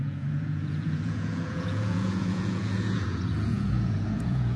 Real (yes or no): no